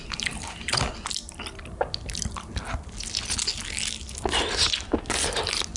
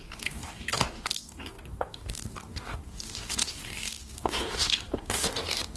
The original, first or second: first